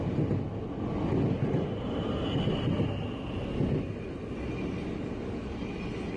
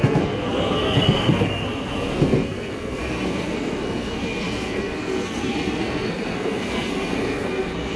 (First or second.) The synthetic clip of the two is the second